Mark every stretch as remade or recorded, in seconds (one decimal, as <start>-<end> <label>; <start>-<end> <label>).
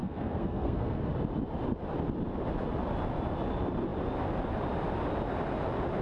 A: 0.0-1.1 remade; 1.1-6.0 recorded